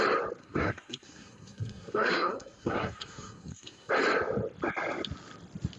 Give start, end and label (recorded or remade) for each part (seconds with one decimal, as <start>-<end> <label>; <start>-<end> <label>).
0.0-0.4 recorded; 0.4-3.9 remade; 3.9-5.8 recorded